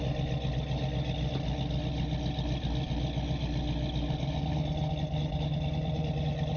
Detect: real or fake real